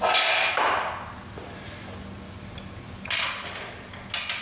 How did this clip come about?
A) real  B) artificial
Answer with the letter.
A